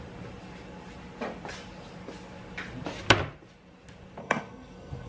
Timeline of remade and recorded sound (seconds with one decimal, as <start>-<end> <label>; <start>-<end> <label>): 0.0-4.2 recorded; 4.2-5.1 remade